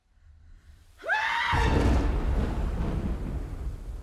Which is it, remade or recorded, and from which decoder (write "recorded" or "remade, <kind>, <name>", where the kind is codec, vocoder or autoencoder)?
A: recorded